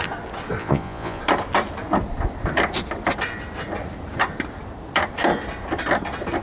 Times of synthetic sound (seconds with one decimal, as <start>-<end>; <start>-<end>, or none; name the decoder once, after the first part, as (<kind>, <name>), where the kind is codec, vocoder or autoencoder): 0.6-1.2 (vocoder, Vocos)